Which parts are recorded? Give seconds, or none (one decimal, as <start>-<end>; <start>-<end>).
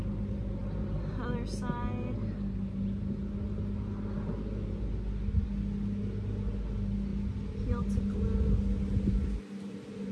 0.0-10.1